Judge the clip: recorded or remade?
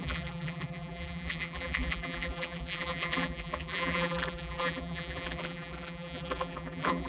remade